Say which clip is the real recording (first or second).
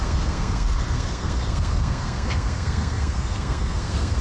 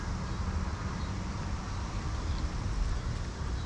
second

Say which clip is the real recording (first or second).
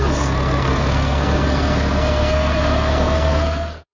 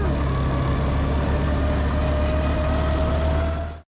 second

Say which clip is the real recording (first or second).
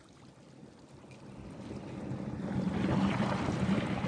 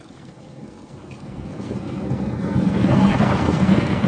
first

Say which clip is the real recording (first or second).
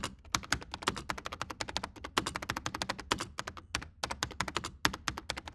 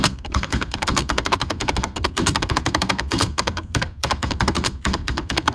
first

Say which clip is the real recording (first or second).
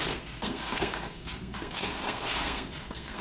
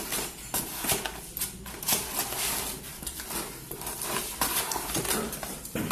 second